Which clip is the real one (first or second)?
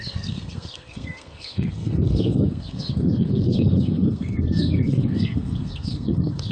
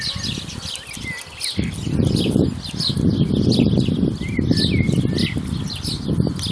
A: second